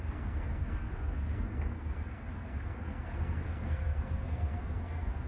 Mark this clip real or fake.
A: fake